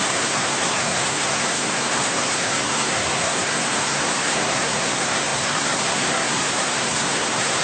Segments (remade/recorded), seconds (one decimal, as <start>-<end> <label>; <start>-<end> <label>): 0.0-7.6 remade